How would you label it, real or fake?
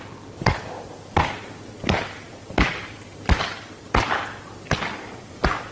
fake